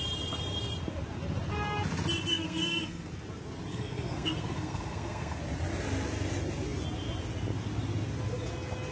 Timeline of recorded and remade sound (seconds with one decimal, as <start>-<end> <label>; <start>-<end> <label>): 0.0-2.3 recorded; 2.3-3.1 remade; 3.1-3.7 recorded; 3.7-5.4 remade; 5.4-8.9 recorded